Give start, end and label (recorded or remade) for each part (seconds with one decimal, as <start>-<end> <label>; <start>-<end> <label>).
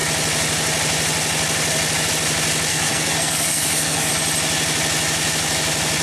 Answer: 0.0-2.7 recorded; 2.7-4.1 remade; 4.1-6.0 recorded